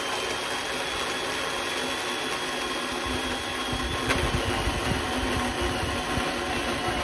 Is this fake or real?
real